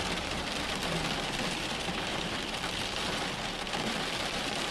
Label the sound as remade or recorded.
remade